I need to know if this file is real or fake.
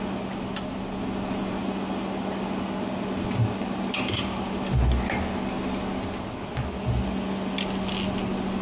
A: real